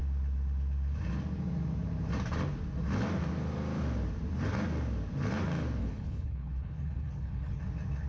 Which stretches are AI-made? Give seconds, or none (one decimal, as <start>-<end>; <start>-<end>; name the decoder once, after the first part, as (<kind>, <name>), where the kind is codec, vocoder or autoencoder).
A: 5.8-7.6 (codec, HILCodec)